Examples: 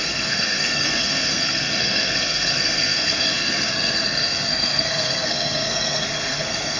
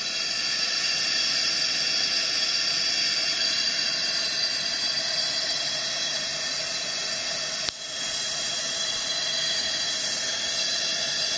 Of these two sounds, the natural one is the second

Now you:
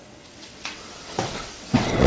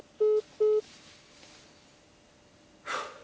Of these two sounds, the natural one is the second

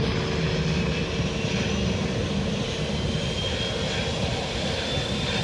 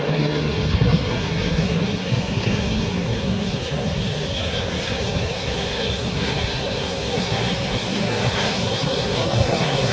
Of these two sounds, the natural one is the first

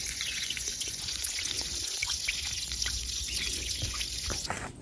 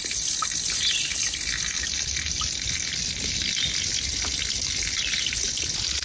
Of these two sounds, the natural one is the second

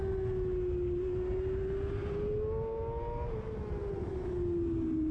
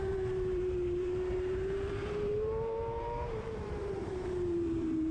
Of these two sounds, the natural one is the first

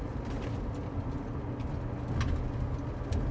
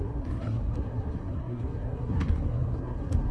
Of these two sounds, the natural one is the first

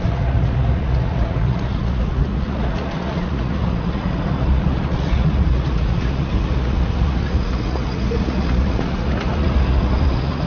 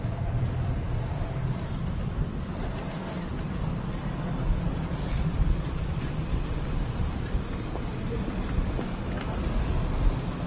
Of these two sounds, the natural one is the second